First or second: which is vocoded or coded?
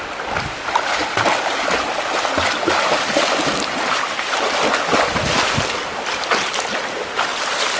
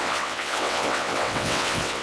second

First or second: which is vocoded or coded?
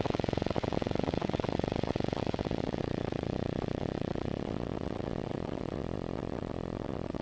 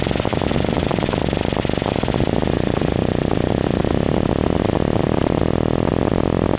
first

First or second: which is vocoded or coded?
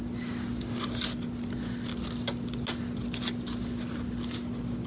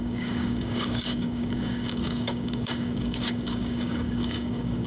second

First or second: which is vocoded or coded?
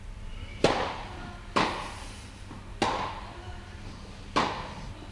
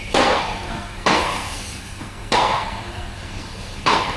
second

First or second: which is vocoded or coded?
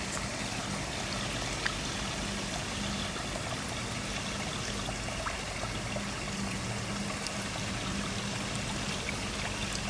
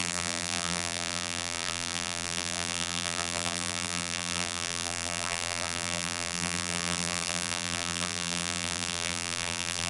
second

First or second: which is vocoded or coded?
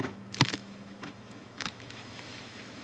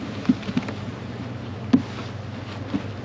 first